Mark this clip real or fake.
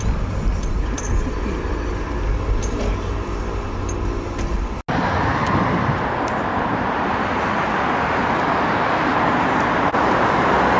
real